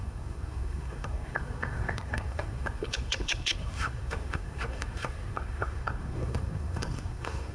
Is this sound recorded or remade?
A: remade